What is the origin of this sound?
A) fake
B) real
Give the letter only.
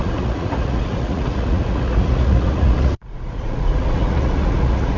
A